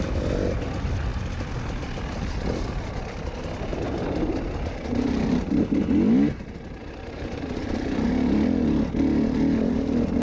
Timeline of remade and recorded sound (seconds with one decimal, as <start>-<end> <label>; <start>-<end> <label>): 0.0-3.7 recorded; 3.7-5.8 remade; 5.8-6.8 recorded; 6.8-8.1 remade; 8.1-10.2 recorded